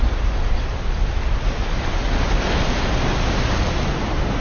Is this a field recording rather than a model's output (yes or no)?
yes